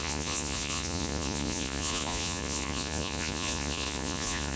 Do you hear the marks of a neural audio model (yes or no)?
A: yes